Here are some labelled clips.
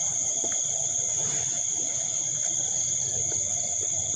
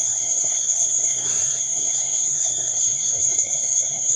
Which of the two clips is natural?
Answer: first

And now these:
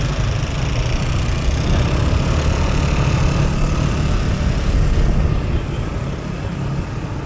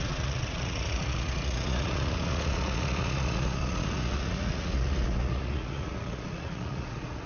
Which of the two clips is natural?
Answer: first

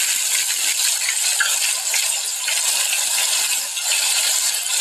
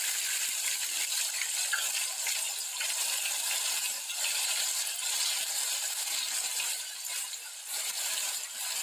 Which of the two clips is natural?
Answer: first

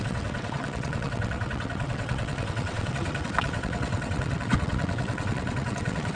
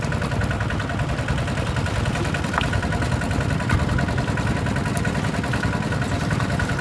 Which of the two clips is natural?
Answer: second